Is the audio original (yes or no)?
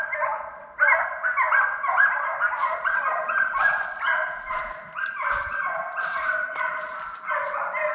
no